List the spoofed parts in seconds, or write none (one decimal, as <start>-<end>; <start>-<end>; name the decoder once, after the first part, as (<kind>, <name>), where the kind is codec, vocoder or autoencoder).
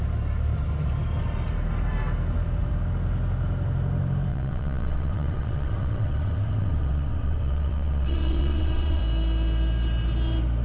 4.3-9.0 (vocoder, WaveNeXt)